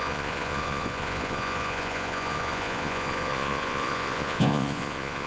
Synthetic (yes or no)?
yes